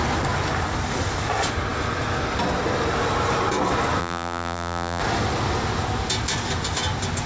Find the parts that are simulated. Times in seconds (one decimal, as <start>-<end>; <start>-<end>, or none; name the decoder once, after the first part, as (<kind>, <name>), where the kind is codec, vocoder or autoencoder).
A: 4.0-5.0 (vocoder, BigVGAN v2)